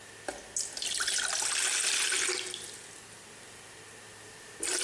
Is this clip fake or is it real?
real